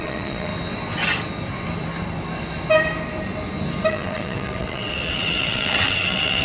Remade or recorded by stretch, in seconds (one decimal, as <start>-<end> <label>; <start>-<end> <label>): 0.0-0.5 remade; 0.5-3.9 recorded; 3.9-6.4 remade